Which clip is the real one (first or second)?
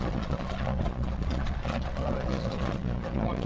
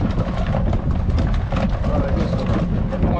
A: second